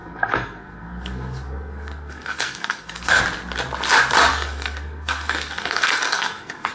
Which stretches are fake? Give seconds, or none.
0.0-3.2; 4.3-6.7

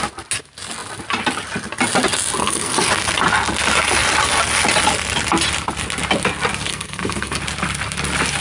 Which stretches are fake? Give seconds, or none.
2.4-2.9; 6.7-7.4

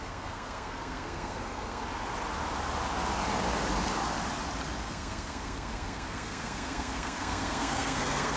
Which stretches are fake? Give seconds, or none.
0.0-1.8; 4.8-8.4

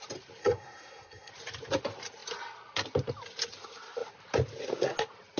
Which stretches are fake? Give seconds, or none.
0.4-1.3

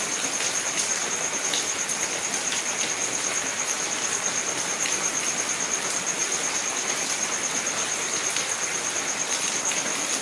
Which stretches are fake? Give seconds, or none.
none

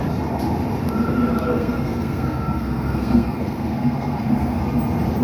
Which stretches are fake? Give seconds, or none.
1.5-4.6